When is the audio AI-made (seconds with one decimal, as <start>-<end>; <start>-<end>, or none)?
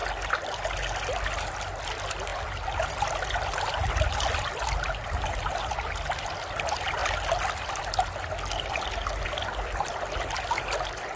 none